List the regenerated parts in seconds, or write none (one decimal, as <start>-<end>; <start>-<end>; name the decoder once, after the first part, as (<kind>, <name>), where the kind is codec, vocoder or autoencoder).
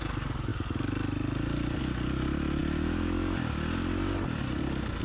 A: none